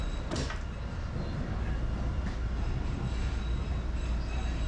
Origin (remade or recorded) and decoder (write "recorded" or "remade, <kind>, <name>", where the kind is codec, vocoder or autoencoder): recorded